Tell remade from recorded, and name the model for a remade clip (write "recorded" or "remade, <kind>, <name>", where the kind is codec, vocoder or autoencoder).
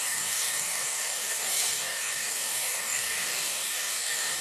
remade, codec, DAC